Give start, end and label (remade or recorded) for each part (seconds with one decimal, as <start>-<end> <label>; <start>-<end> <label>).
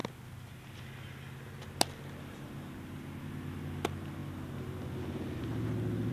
0.0-6.1 recorded